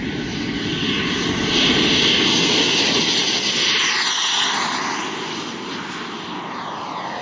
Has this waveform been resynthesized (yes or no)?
no